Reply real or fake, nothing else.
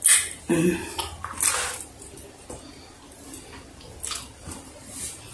real